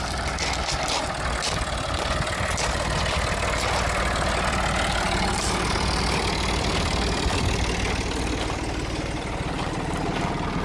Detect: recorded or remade recorded